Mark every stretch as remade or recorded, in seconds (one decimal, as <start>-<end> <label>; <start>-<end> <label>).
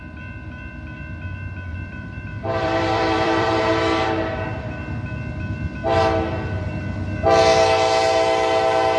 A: 0.0-1.7 recorded; 1.7-3.6 remade; 3.6-9.0 recorded